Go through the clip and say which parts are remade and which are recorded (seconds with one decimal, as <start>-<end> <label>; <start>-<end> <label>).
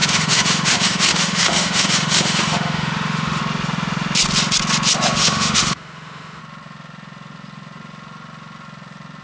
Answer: 0.0-3.4 remade; 3.4-5.2 recorded; 5.2-6.4 remade; 6.4-9.2 recorded